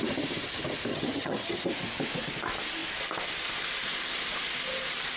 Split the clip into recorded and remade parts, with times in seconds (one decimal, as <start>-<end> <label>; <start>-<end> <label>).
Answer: 0.0-0.9 recorded; 0.9-1.6 remade; 1.6-5.2 recorded